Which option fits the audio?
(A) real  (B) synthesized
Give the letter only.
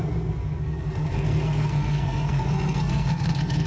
B